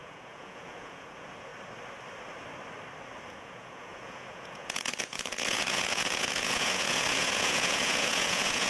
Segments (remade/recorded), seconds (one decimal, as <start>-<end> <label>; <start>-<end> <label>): 0.0-1.5 remade; 1.5-3.3 recorded; 3.3-8.7 remade